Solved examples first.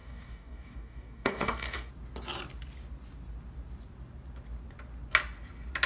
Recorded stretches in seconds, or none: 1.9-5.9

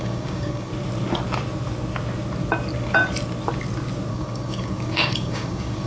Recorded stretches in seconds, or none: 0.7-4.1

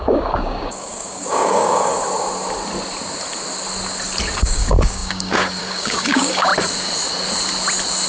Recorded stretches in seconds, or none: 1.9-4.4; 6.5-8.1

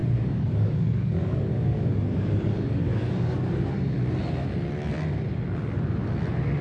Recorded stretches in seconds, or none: 3.6-6.6

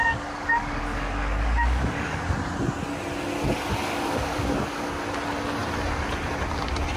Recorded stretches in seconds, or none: 2.2-3.8; 5.0-7.0